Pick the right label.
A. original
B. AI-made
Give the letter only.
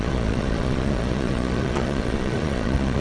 B